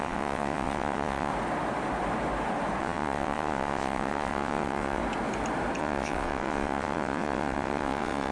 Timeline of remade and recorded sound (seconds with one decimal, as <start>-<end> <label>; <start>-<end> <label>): 0.0-1.3 remade; 1.3-2.8 recorded; 2.8-5.0 remade; 5.0-5.8 recorded; 5.8-8.3 remade